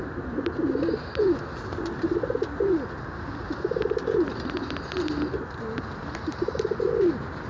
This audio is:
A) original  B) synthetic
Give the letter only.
A